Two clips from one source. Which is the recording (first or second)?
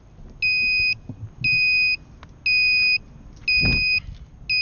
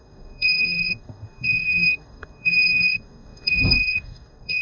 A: first